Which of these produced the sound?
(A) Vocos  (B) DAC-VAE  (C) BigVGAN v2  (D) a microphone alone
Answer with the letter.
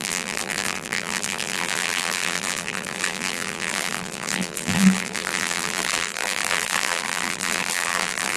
C